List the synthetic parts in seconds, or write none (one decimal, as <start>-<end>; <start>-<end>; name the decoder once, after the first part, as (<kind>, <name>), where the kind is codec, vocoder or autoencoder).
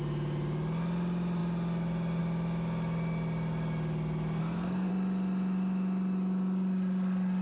4.4-4.9 (codec, SNAC)